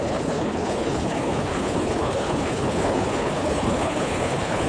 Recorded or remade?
remade